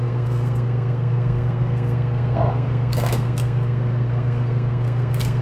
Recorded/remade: remade